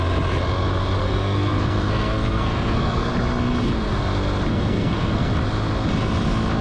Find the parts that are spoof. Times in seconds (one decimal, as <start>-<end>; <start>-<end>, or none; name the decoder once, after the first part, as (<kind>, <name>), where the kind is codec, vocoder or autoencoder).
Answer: 1.0-3.1 (codec, SNAC); 4.5-5.3